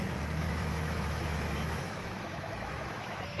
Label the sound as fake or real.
fake